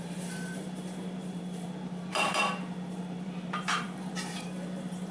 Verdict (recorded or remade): remade